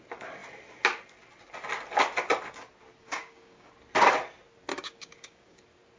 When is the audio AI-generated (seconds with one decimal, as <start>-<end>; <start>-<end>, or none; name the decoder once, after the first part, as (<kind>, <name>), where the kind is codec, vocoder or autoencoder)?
3.0-3.7 (codec, DAC); 4.7-5.6